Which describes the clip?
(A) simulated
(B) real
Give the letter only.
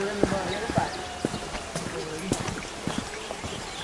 B